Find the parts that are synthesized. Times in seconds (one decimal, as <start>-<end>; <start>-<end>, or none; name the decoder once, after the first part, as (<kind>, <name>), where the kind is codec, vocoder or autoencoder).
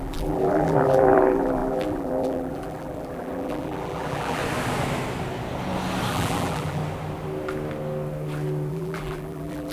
0.0-4.4 (vocoder, BigVGAN v2); 6.1-6.8; 8.7-9.7